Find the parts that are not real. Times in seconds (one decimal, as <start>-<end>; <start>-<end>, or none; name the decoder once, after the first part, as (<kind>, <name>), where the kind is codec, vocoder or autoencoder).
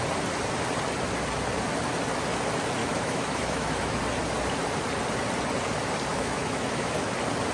2.8-4.0 (autoencoder, DAC-VAE); 6.1-7.1